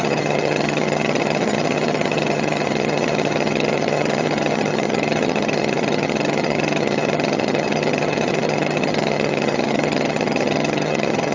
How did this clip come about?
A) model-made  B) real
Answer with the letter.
A